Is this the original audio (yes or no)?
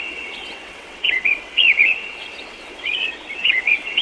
no